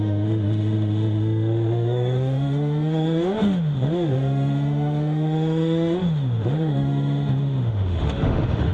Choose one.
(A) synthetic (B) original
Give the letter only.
A